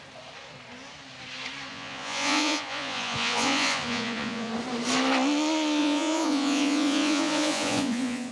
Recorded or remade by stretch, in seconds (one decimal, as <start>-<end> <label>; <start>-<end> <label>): 0.0-1.7 recorded; 1.7-4.5 remade; 4.5-5.8 recorded; 5.8-8.3 remade

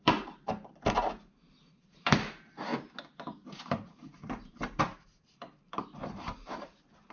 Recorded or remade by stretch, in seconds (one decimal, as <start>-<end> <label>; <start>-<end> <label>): 0.0-2.7 remade; 2.7-3.5 recorded; 3.5-7.1 remade

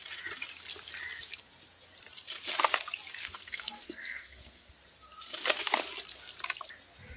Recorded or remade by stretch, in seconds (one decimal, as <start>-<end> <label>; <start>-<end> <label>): 0.0-3.2 recorded; 3.2-4.7 remade; 4.7-7.2 recorded

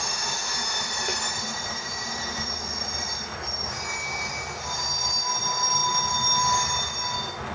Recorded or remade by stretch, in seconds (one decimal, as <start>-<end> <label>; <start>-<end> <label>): 0.0-7.5 recorded